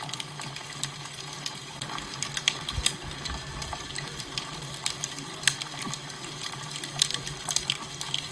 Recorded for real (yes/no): yes